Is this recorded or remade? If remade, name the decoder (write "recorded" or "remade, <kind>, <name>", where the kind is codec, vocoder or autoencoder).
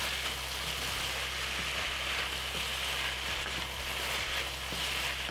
recorded